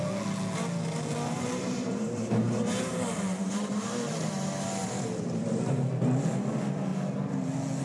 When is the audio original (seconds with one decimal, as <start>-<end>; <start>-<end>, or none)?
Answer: 0.0-1.3; 5.6-7.8